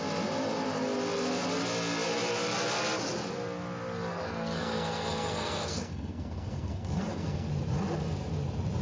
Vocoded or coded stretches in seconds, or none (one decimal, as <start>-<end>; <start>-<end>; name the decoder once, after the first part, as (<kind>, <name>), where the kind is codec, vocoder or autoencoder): 4.1-7.5 (codec, SNAC)